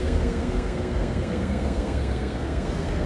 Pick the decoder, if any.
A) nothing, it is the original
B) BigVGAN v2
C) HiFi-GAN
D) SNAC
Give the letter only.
D